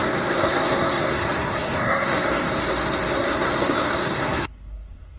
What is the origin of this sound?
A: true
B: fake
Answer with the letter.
B